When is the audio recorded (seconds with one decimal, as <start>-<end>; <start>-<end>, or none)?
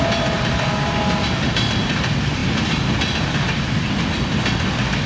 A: 0.0-5.1